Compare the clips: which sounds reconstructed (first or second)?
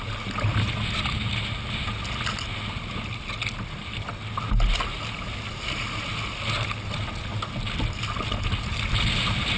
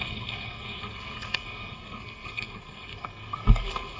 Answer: second